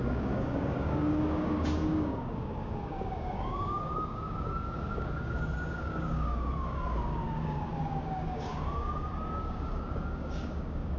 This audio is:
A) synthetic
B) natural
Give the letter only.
A